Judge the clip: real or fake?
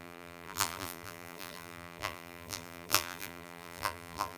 fake